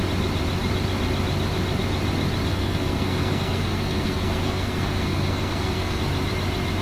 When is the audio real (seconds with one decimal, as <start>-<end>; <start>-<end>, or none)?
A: 0.0-2.5; 6.0-6.8